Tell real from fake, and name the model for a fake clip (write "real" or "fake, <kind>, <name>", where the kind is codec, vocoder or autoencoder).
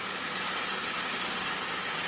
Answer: real